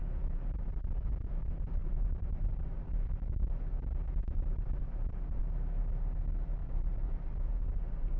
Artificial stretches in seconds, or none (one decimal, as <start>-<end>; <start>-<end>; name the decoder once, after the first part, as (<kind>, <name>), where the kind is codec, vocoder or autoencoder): 0.0-1.3 (vocoder, BigVGAN v2); 1.8-2.9; 4.8-5.4; 6.6-8.2